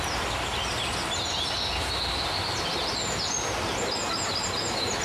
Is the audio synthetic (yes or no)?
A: no